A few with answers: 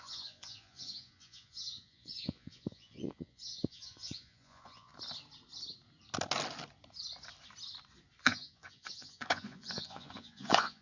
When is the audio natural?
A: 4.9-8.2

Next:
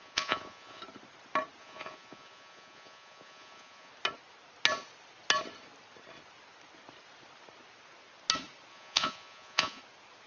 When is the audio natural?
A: 0.8-1.6; 3.9-8.7; 9.8-10.3

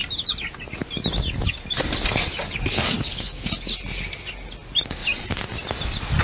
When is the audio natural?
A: 0.0-2.8; 3.4-6.2

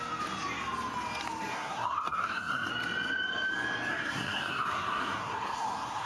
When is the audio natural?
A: 0.0-1.5; 2.7-3.9

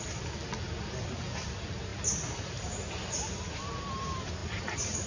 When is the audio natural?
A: 0.0-5.1